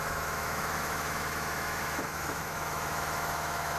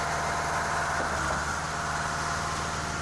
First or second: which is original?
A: second